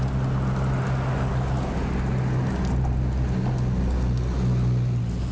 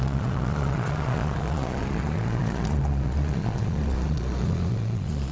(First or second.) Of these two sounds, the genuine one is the first